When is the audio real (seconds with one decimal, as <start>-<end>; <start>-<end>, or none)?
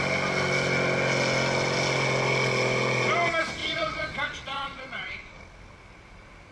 0.0-3.6; 5.4-6.5